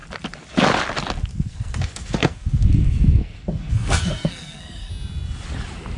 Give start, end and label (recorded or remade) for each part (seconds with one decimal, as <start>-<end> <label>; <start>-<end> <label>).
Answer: 0.0-1.3 recorded; 1.3-4.9 remade; 4.9-6.0 recorded